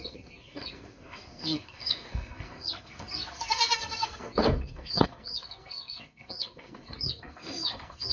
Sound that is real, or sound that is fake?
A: fake